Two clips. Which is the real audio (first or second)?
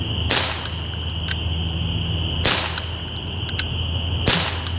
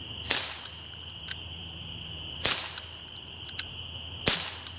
first